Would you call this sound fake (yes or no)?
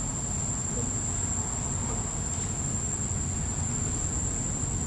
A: no